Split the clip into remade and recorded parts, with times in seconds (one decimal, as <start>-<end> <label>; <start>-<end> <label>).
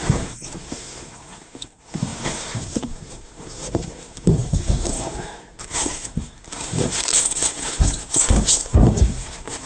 0.0-9.7 remade